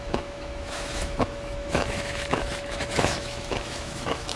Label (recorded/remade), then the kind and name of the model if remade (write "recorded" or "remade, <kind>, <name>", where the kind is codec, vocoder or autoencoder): remade, autoencoder, DAC-VAE